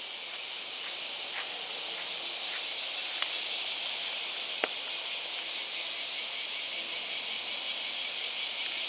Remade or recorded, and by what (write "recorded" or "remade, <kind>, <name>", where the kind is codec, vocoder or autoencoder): recorded